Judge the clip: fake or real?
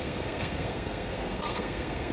fake